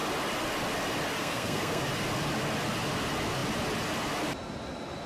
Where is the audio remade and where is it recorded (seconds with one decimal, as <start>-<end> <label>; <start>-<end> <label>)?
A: 0.0-1.2 recorded; 1.2-1.8 remade; 1.8-5.1 recorded